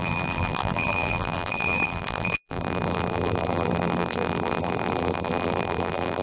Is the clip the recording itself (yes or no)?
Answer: no